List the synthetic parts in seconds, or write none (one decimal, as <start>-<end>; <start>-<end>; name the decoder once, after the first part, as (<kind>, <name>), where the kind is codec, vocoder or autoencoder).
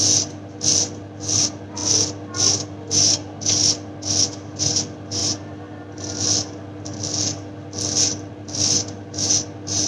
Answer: none